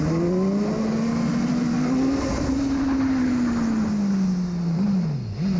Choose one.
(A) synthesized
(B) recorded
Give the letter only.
B